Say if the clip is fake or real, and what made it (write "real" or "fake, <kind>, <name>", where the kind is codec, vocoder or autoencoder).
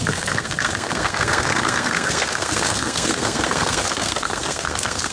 fake, codec, SNAC